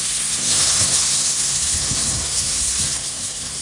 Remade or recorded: remade